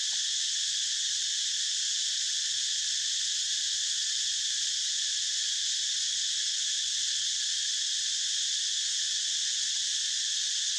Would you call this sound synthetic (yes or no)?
no